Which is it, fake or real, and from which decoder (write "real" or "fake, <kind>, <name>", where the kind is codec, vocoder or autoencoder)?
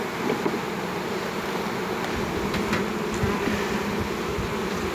real